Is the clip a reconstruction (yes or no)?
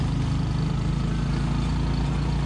no